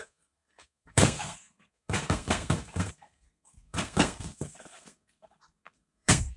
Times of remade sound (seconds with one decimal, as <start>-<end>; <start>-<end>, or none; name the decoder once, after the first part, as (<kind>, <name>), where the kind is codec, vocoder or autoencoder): 0.0-6.4 (codec, SNAC)